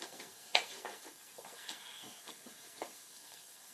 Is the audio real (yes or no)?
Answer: no